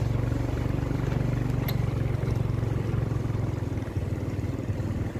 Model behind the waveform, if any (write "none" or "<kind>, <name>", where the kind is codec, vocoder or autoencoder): none